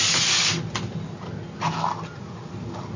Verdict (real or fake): real